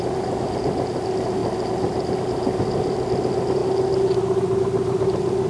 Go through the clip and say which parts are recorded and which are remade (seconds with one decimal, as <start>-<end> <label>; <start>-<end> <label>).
0.0-5.5 recorded